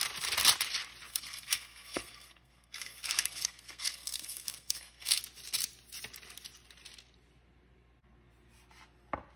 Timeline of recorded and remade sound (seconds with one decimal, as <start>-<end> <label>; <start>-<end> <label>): 0.0-1.1 recorded; 1.1-5.2 remade; 5.2-9.4 recorded